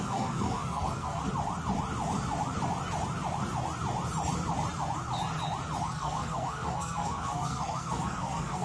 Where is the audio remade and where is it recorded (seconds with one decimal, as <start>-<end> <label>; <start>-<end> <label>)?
0.0-1.2 remade; 1.2-5.8 recorded; 5.8-8.6 remade